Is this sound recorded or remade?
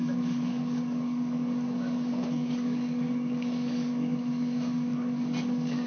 remade